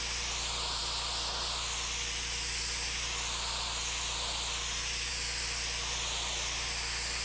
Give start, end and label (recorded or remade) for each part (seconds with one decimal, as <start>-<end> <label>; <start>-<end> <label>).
0.0-7.2 recorded